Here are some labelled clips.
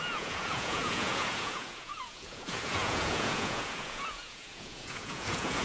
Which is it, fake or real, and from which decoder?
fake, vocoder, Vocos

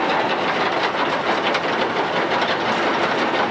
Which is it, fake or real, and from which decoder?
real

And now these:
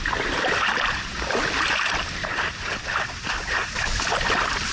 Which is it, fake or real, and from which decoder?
real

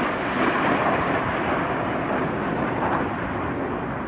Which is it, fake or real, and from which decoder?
real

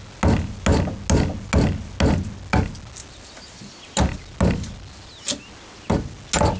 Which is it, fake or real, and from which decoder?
real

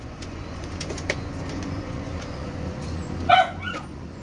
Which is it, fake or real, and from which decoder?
fake, vocoder, Vocos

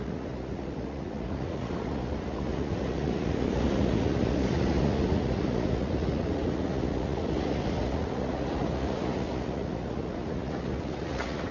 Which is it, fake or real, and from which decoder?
fake, vocoder, Vocos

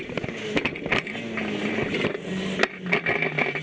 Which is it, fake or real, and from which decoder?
real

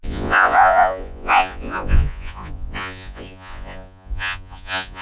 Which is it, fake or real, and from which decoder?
fake, vocoder, Vocos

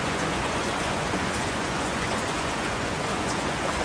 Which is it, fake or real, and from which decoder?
fake, vocoder, Vocos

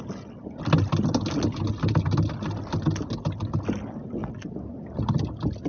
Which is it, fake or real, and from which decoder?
real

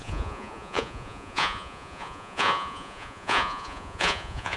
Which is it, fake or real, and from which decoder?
fake, vocoder, Vocos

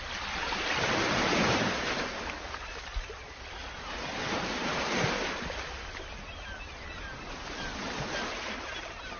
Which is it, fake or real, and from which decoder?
real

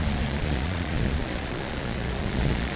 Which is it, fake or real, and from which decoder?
fake, vocoder, Vocos